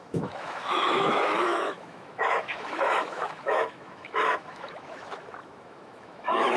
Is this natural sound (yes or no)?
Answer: no